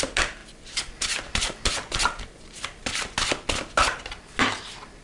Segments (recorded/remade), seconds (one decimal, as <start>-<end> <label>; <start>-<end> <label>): 0.0-0.4 recorded; 0.4-2.2 remade; 2.2-5.0 recorded